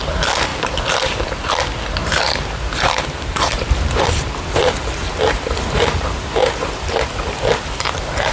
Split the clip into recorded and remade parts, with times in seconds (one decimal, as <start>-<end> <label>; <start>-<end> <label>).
0.0-0.5 recorded; 0.5-1.5 remade; 1.5-2.0 recorded; 2.0-6.8 remade; 6.8-8.3 recorded

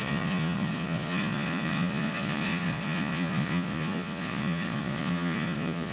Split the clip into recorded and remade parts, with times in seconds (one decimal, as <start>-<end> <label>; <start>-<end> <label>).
0.0-5.9 remade